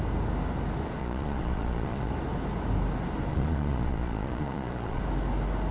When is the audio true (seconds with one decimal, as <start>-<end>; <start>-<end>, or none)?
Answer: 0.0-1.0; 2.1-3.3; 5.0-5.7